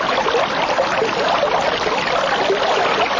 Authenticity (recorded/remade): recorded